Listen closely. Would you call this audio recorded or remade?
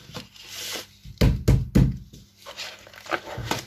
recorded